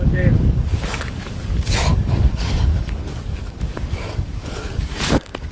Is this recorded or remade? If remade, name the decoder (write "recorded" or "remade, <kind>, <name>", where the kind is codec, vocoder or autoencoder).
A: remade, codec, DAC